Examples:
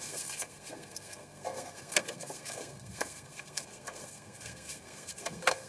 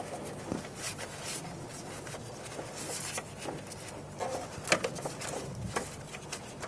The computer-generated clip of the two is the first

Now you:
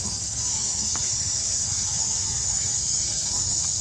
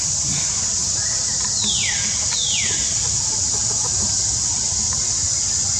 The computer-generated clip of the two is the first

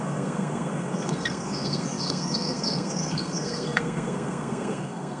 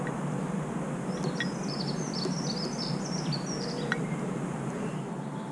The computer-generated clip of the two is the first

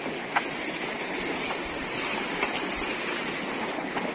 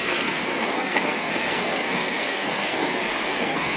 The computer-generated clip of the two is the second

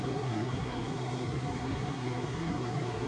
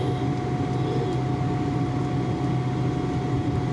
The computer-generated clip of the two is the first